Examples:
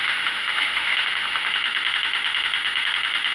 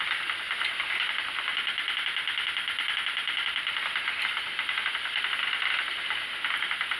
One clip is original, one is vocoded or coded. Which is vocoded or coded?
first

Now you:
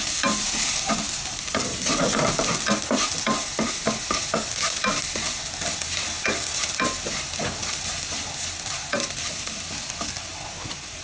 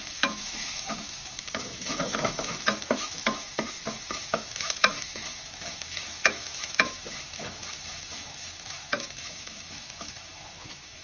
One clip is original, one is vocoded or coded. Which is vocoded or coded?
second